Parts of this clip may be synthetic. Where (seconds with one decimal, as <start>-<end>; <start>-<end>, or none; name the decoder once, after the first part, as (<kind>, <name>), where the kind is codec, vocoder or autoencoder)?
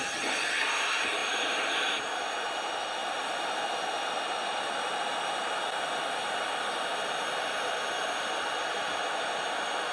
1.2-1.8 (vocoder, BigVGAN v2)